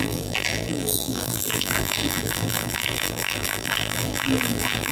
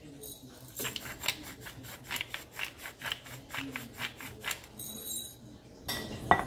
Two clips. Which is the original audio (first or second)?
second